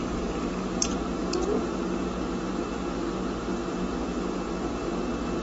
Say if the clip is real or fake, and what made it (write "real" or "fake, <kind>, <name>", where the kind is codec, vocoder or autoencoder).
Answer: real